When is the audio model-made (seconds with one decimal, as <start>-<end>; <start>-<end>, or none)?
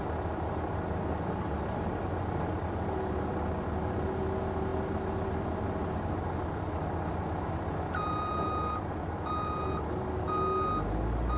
none